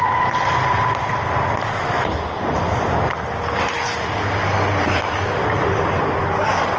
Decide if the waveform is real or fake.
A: real